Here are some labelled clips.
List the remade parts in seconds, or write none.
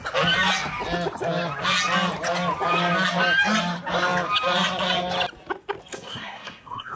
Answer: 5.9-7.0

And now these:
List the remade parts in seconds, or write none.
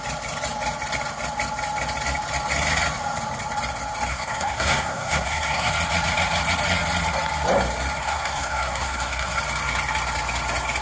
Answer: 4.1-5.7; 8.0-9.4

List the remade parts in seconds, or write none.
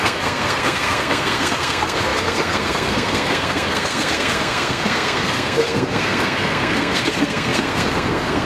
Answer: 0.0-8.5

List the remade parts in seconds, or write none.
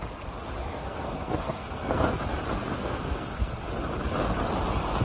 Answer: 0.6-2.2; 2.6-3.6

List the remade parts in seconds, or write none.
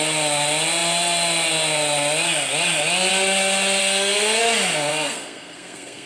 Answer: 3.8-4.4; 4.9-6.1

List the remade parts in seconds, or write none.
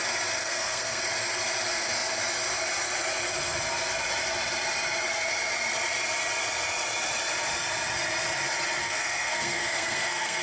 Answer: 0.4-1.0; 8.8-10.4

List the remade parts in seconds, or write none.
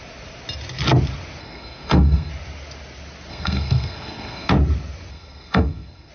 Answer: 1.4-2.3; 3.3-4.5; 5.1-6.1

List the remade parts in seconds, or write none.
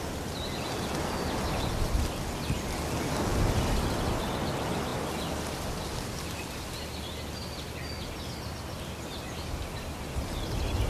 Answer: none